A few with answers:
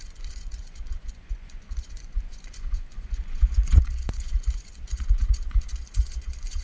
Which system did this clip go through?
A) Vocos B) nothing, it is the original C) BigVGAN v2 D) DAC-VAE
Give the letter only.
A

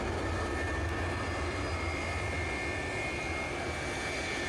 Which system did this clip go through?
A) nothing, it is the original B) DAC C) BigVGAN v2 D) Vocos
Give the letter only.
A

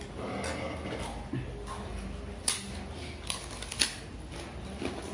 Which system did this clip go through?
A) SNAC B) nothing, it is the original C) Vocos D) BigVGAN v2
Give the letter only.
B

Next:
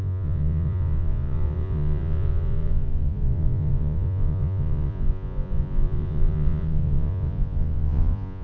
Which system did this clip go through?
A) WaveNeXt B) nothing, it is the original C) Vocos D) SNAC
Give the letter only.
C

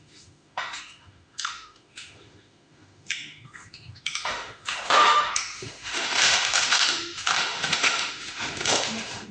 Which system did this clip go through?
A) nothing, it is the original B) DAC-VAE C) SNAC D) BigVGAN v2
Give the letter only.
B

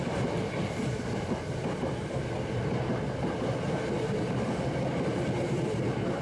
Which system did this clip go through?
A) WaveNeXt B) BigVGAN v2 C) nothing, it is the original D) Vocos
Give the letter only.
B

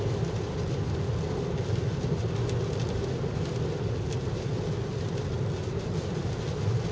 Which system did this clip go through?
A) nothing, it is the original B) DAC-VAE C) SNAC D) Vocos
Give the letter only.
A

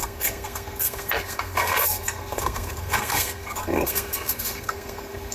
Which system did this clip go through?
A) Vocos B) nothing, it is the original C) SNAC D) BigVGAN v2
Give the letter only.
C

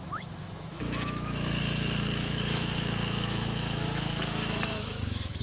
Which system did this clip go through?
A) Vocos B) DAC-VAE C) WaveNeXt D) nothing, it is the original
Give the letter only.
B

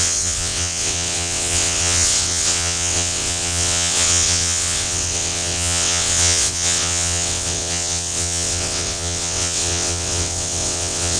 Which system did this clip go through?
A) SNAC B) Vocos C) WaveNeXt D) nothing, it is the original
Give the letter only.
C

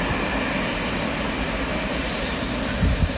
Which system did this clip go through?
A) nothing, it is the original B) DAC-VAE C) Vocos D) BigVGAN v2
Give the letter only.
A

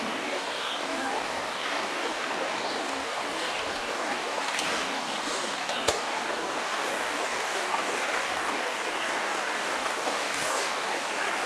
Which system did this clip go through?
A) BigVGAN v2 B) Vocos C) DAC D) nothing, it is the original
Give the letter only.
C